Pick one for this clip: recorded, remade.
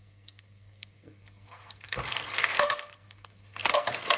remade